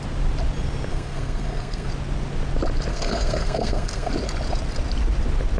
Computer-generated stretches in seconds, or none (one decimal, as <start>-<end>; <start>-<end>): 0.9-1.9; 2.9-4.1